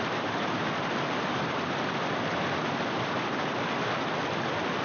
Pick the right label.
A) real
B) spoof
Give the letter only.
A